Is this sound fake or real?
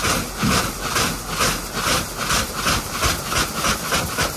real